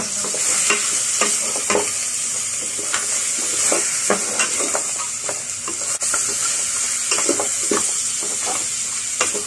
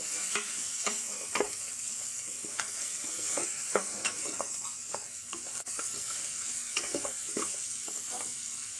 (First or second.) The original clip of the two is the first